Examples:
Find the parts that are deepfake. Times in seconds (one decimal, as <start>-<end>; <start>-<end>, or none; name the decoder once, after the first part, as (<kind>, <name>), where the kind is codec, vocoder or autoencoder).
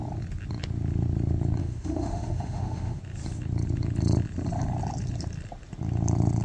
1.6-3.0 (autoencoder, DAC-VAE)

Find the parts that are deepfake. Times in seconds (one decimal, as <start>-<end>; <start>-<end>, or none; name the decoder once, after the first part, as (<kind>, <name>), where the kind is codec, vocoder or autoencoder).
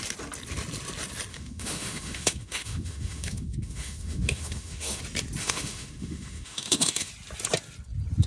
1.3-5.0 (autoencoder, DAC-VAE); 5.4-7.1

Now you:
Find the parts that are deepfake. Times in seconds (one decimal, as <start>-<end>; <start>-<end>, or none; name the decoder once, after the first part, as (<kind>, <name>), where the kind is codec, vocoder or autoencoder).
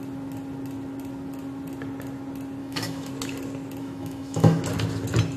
2.6-3.1 (autoencoder, DAC-VAE); 3.8-4.6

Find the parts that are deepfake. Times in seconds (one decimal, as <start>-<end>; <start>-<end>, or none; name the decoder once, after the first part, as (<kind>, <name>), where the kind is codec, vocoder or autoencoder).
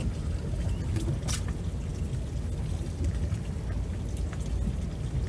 none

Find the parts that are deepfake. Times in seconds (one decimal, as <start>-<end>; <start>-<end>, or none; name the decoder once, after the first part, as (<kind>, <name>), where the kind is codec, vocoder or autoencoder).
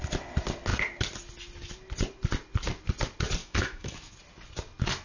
3.4-4.1 (autoencoder, DAC-VAE)